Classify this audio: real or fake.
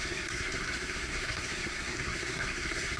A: fake